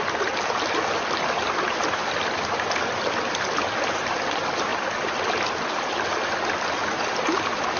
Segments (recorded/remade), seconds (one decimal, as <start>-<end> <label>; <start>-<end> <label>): 0.0-7.8 recorded